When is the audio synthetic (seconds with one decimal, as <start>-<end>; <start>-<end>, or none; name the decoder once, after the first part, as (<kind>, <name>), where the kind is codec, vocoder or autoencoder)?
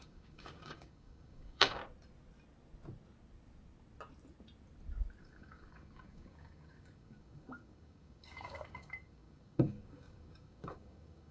0.0-1.8 (codec, DAC); 5.2-11.3